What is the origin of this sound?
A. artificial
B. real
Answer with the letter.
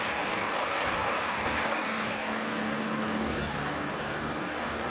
A